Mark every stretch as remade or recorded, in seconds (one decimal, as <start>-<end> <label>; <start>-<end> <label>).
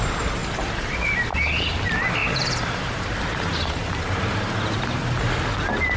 0.0-0.4 recorded; 0.4-1.2 remade; 1.2-2.2 recorded; 2.2-5.3 remade; 5.3-6.0 recorded